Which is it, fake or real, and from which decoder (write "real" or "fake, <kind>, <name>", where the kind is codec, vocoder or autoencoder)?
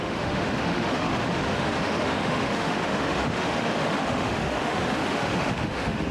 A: fake, autoencoder, DAC-VAE